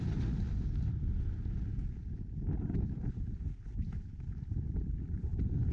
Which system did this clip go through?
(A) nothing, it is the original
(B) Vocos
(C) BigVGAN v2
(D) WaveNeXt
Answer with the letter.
A